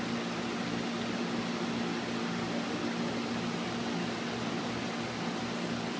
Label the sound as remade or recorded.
recorded